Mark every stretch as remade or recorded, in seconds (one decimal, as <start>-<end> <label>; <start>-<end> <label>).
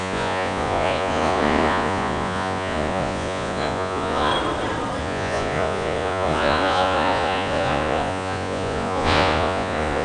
0.0-4.3 remade; 4.3-5.0 recorded; 5.0-10.0 remade